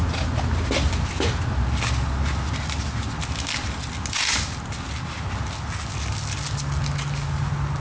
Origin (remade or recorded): recorded